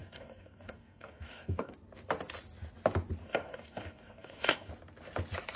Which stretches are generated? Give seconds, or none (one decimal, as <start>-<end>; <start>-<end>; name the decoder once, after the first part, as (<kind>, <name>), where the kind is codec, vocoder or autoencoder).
0.0-1.7 (codec, DAC); 3.2-4.7